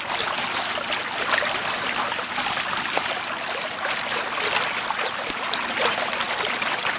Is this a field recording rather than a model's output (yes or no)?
yes